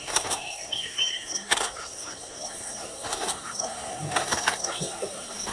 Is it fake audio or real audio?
fake